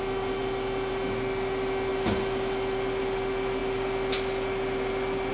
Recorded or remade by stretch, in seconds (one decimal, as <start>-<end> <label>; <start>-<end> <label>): 0.0-5.3 recorded